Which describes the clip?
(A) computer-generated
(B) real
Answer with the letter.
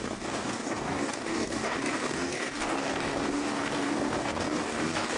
A